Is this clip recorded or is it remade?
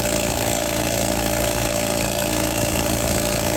remade